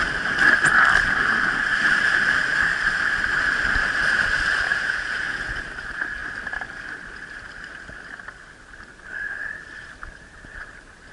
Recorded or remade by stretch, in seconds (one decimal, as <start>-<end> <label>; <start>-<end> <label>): 0.0-4.7 recorded; 4.7-5.5 remade; 5.5-11.1 recorded